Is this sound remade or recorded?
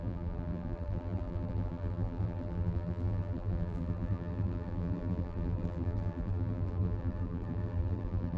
remade